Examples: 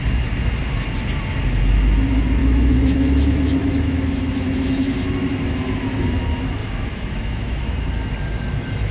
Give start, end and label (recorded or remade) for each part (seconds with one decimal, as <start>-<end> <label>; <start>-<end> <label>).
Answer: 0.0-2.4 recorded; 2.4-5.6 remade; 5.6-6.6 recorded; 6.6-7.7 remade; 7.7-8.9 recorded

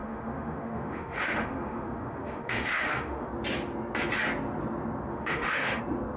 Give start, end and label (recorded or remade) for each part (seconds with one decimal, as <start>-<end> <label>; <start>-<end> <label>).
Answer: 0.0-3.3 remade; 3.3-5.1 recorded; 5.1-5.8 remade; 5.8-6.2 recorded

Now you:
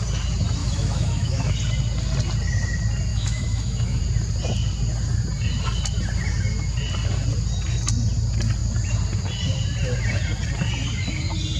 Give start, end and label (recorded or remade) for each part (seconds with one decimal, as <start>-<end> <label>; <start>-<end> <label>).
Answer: 0.0-0.6 recorded; 0.6-1.5 remade; 1.5-3.1 recorded; 3.1-4.0 remade; 4.0-11.6 recorded